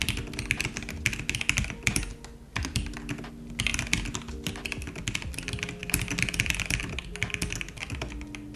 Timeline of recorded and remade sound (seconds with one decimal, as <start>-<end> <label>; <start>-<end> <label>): 0.0-8.6 recorded